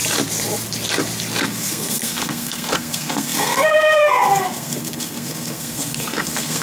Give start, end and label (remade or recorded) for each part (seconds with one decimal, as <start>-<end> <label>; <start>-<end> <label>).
0.0-1.4 recorded; 1.4-6.6 remade